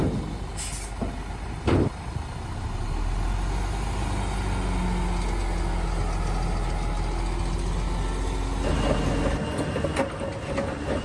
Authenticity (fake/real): real